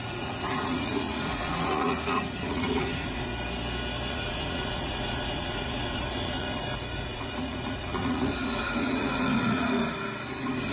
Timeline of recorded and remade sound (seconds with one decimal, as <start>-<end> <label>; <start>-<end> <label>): 0.0-3.3 remade; 3.3-4.1 recorded; 4.1-9.8 remade; 9.8-10.7 recorded